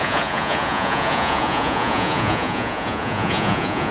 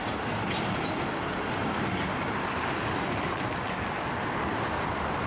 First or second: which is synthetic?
first